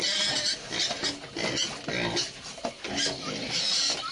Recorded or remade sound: recorded